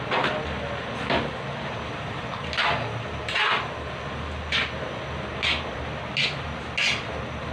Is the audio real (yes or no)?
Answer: yes